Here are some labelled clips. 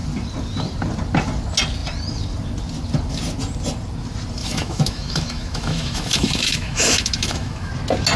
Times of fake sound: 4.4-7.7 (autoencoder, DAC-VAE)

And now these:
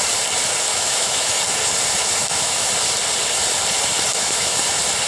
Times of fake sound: 0.7-1.4 (autoencoder, DAC-VAE); 2.2-2.7; 4.1-4.6